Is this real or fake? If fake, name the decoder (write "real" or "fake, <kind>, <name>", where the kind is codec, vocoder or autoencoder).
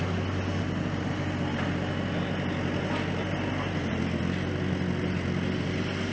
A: real